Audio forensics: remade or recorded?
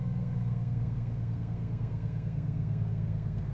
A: remade